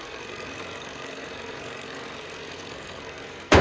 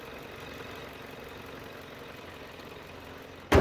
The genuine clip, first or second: second